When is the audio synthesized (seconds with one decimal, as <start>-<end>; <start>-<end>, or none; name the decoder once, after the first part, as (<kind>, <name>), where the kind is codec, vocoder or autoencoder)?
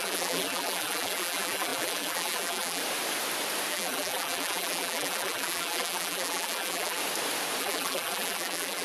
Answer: 0.0-2.8 (vocoder, BigVGAN v2); 3.7-7.0; 7.6-8.8